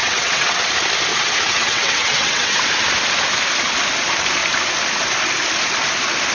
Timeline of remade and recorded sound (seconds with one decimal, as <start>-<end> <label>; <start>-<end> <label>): 0.0-0.7 remade; 0.7-1.1 recorded; 1.1-2.6 remade; 2.6-6.3 recorded